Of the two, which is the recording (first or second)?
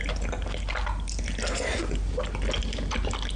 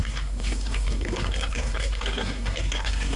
first